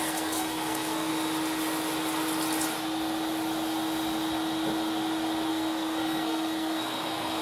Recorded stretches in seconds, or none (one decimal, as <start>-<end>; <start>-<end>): 1.1-5.5